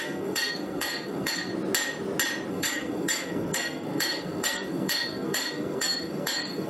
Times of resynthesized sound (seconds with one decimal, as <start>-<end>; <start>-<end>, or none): 0.0-1.5; 2.5-6.7